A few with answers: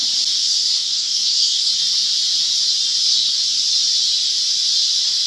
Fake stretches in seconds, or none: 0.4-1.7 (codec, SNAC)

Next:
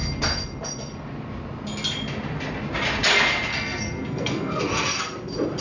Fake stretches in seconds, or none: 3.5-4.6 (codec, SNAC)

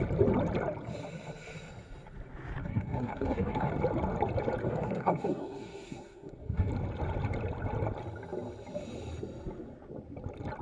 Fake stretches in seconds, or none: 2.6-3.7 (codec, SNAC); 4.6-6.7

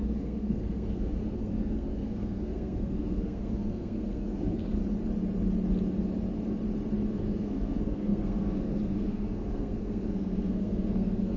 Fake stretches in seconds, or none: 0.0-4.8 (codec, SNAC); 7.1-11.4

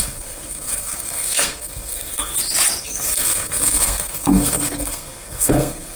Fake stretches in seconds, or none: 0.0-2.3 (codec, SNAC); 2.8-6.0